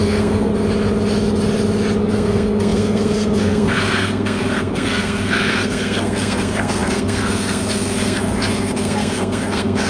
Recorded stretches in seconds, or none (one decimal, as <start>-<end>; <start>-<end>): 0.5-2.0